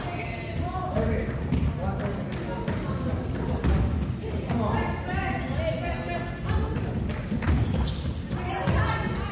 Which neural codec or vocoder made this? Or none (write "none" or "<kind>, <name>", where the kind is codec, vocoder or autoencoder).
none